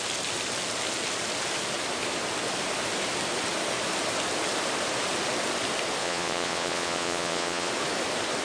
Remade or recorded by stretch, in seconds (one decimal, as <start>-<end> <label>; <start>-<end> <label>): 0.0-6.0 recorded; 6.0-7.7 remade; 7.7-8.4 recorded